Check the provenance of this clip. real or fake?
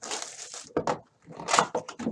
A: real